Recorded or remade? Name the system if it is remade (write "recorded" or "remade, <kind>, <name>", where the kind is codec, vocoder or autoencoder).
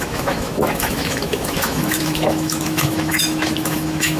remade, autoencoder, DAC-VAE